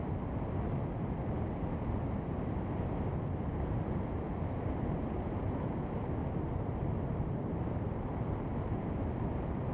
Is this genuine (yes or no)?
yes